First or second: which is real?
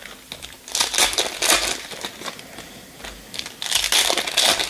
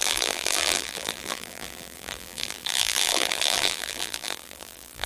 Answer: first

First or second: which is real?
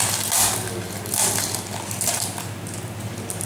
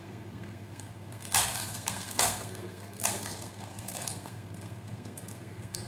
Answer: first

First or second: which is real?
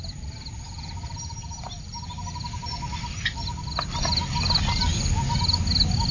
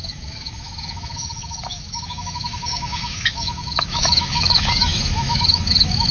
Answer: first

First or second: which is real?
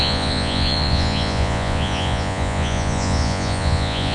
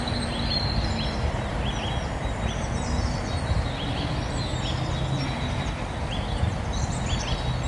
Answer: second